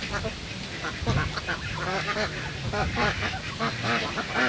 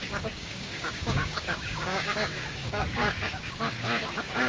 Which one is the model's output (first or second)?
second